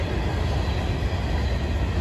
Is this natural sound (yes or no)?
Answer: yes